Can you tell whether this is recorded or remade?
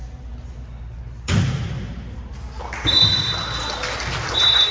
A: recorded